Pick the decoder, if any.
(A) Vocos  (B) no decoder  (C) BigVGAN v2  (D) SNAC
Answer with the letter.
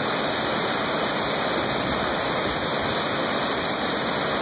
B